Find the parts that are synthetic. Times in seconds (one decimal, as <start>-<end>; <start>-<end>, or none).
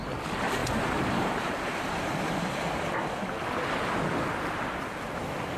0.6-2.5